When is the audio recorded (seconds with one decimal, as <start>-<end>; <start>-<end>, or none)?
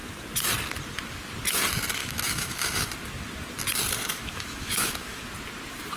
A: 0.0-2.0; 2.9-4.1; 5.2-6.0